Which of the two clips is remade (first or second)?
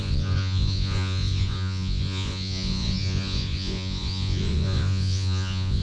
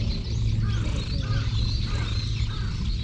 first